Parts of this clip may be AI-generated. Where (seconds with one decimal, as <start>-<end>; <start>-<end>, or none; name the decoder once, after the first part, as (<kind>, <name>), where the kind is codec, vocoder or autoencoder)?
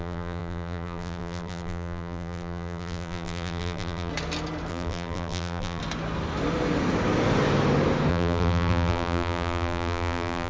0.0-4.1 (vocoder, BigVGAN v2); 4.7-5.8; 8.1-10.5